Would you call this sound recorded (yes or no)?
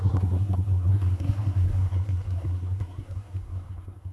no